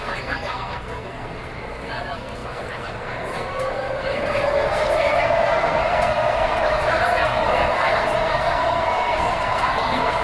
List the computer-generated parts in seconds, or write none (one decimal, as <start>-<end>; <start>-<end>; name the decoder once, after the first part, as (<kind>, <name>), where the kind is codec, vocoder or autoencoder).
0.0-10.2 (codec, SNAC)